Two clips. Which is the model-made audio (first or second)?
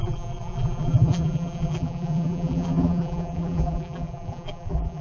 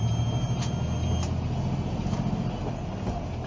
first